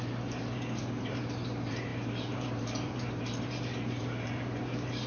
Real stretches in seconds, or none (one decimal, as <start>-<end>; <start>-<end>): none